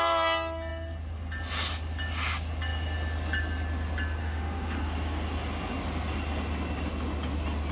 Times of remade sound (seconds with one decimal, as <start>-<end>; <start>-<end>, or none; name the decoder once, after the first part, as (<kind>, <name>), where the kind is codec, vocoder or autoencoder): 4.2-4.8 (autoencoder, DAC-VAE)